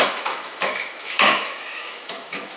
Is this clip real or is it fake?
fake